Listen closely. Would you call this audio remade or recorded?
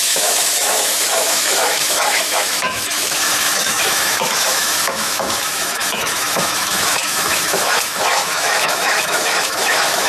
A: remade